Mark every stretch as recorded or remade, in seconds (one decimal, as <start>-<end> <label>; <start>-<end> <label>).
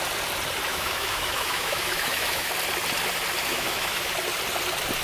0.0-0.7 recorded; 0.7-2.5 remade; 2.5-3.5 recorded; 3.5-4.1 remade; 4.1-5.0 recorded